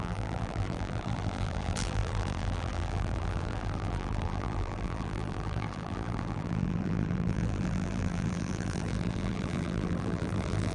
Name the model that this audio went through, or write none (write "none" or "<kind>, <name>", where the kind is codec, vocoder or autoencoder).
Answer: vocoder, BigVGAN v2